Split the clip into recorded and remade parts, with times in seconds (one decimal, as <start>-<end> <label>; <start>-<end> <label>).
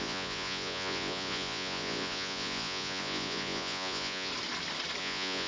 0.0-4.3 remade; 4.3-5.0 recorded; 5.0-5.5 remade